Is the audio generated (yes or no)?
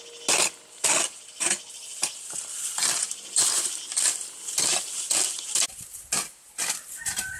no